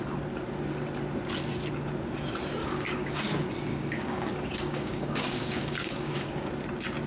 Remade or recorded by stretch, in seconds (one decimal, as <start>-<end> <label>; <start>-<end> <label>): 0.0-2.6 recorded; 2.6-3.2 remade; 3.2-3.7 recorded; 3.7-6.5 remade; 6.5-7.1 recorded